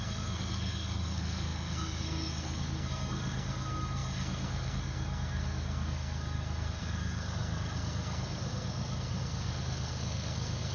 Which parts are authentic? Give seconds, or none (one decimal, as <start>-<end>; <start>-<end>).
none